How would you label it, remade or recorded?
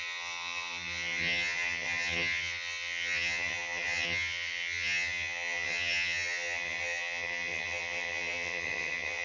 remade